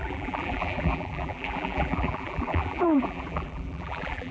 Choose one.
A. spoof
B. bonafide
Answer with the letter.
A